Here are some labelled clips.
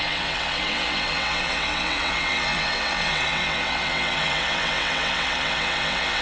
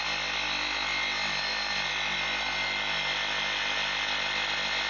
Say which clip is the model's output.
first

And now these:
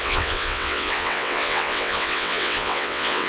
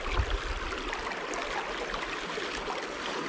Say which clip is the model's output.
first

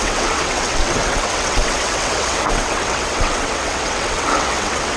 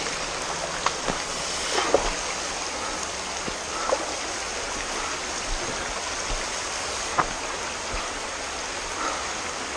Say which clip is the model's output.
first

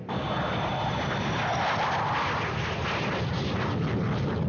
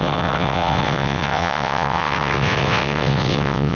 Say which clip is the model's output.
second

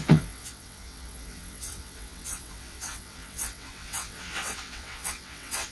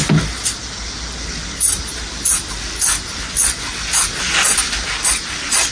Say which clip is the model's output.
first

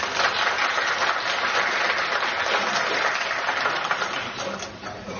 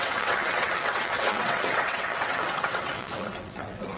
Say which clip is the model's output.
second